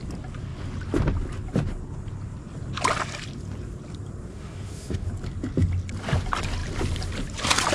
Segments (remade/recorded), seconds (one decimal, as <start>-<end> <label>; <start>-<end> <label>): 0.0-4.3 recorded; 4.3-5.1 remade; 5.1-7.7 recorded

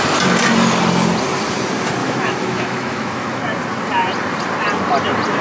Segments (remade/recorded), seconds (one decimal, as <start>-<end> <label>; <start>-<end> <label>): 0.0-2.0 recorded; 2.0-3.4 remade; 3.4-5.4 recorded

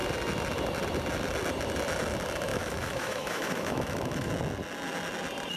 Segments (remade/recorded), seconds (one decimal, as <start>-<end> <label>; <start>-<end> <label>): 0.0-2.5 recorded; 2.5-4.3 remade; 4.3-5.6 recorded

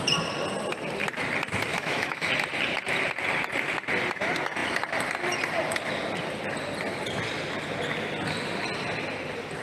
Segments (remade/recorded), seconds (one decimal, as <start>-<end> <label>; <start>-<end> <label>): 0.0-1.7 recorded; 1.7-2.3 remade; 2.3-9.6 recorded

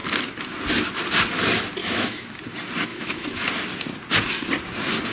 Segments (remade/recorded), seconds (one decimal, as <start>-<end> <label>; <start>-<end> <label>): 0.0-1.8 recorded; 1.8-2.4 remade; 2.4-2.9 recorded; 2.9-3.5 remade; 3.5-5.1 recorded

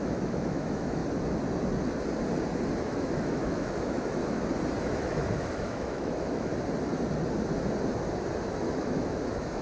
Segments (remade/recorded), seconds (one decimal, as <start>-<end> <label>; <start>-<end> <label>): 0.0-1.0 remade; 1.0-2.8 recorded; 2.8-4.2 remade; 4.2-4.8 recorded; 4.8-6.5 remade; 6.5-8.5 recorded; 8.5-9.6 remade

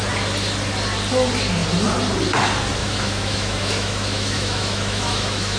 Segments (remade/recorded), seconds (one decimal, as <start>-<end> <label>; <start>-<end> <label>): 0.0-2.8 recorded; 2.8-5.6 remade